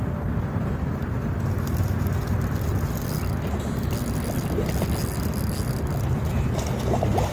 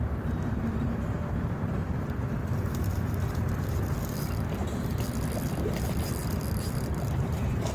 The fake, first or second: second